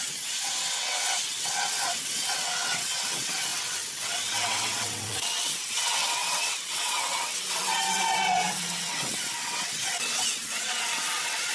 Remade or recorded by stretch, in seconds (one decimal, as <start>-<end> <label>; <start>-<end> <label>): 0.0-11.5 remade